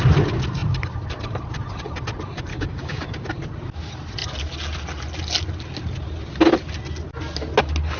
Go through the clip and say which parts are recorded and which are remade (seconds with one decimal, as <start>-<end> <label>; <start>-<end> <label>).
0.0-2.5 recorded; 2.5-3.3 remade; 3.3-8.0 recorded